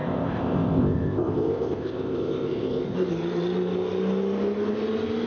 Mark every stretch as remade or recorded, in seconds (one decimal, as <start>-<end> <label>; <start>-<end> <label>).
0.0-3.1 remade; 3.1-5.3 recorded